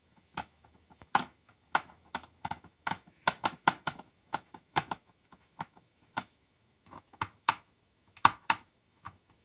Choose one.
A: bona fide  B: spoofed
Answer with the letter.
B